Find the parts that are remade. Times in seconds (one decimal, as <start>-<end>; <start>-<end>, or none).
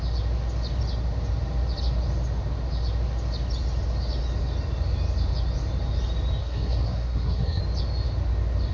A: 6.4-7.6